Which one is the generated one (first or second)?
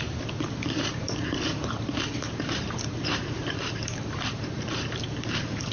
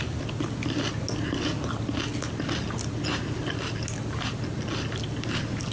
first